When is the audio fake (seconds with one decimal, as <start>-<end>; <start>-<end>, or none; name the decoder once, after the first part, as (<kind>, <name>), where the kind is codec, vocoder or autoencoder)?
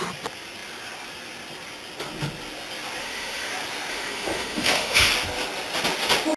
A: 3.0-3.5 (autoencoder, DAC-VAE); 3.9-5.1